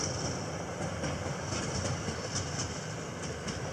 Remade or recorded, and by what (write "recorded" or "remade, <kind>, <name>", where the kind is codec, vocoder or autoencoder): remade, vocoder, BigVGAN v2